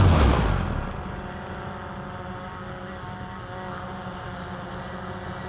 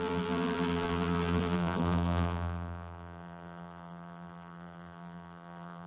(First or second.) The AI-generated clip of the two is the second